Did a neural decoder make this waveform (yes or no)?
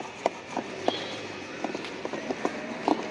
no